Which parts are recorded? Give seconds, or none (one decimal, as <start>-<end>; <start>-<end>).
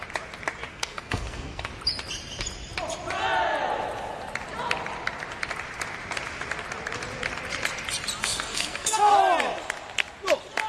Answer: 0.0-0.7; 1.7-8.2; 9.1-10.7